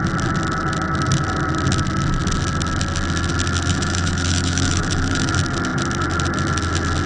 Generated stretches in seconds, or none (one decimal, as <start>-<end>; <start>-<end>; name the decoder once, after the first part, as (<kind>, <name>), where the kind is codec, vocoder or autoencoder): 3.7-5.3 (autoencoder, DAC-VAE)